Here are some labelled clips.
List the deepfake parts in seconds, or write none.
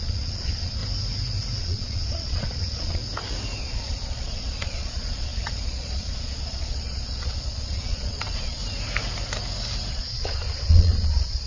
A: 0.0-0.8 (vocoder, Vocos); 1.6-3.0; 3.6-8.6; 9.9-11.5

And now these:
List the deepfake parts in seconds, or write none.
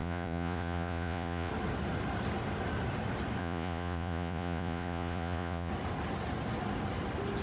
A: 0.0-1.5 (vocoder, Vocos); 3.4-5.7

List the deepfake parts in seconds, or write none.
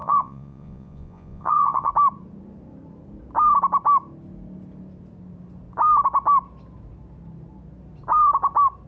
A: 0.0-1.9 (vocoder, Vocos)